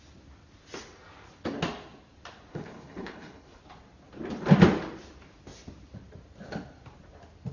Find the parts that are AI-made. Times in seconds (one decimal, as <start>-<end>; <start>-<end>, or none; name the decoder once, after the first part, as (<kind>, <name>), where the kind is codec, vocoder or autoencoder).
2.5-3.6 (codec, HILCodec)